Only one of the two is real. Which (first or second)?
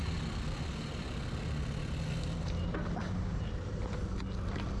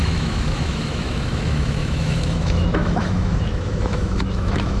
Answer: first